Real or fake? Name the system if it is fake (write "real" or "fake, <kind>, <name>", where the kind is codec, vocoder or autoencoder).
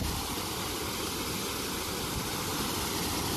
real